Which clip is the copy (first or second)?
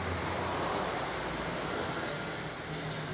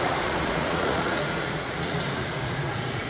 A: second